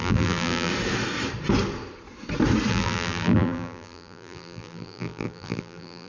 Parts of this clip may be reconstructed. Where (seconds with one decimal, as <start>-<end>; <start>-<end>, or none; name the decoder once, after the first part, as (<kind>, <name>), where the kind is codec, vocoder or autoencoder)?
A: 0.0-0.7 (vocoder, BigVGAN v2); 2.7-6.1